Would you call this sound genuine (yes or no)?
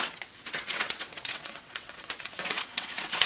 no